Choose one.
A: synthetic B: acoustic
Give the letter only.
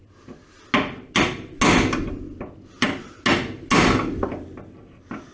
B